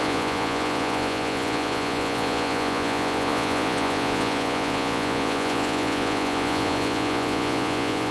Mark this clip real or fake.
fake